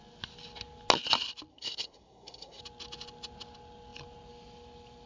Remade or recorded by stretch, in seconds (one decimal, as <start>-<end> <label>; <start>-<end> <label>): 0.0-1.5 recorded; 1.5-2.6 remade; 2.6-5.1 recorded